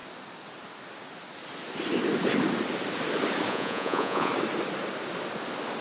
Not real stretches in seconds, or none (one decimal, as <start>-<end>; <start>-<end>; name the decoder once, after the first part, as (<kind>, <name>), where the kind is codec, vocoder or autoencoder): 3.5-4.3 (vocoder, Vocos)